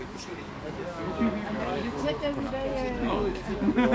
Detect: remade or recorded remade